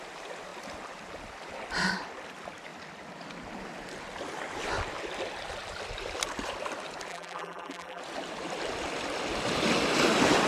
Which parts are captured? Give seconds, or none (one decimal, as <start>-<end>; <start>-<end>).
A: 0.0-7.1; 8.0-10.5